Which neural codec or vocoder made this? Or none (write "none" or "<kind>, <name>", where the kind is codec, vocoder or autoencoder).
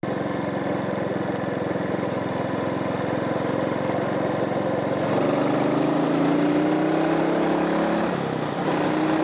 none